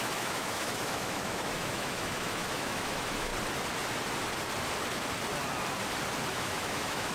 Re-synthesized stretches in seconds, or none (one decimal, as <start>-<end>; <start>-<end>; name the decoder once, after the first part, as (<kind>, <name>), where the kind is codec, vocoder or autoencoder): 0.0-3.3 (autoencoder, DAC-VAE); 6.3-7.1